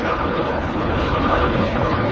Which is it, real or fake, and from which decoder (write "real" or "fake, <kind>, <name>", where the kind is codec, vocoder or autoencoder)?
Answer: fake, codec, HILCodec